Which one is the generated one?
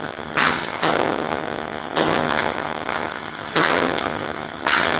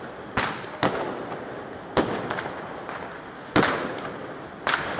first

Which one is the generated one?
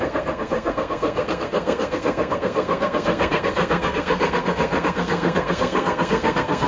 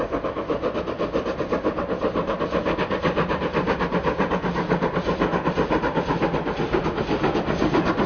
first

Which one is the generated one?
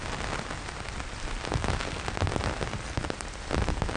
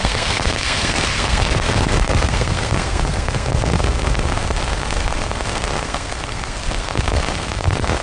second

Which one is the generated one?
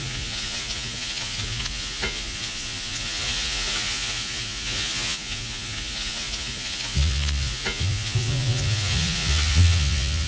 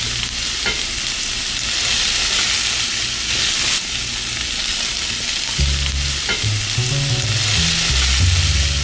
first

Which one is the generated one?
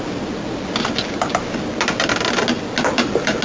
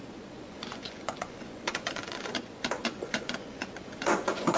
second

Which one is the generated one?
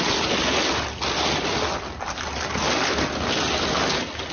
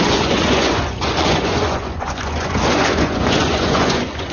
second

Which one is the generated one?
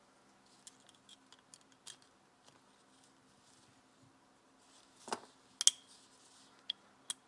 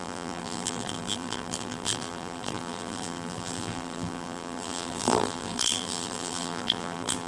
second